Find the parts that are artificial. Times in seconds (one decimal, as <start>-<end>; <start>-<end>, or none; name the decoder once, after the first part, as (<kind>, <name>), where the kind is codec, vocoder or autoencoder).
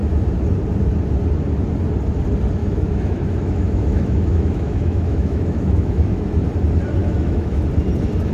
2.6-6.3 (autoencoder, DAC-VAE); 7.0-7.6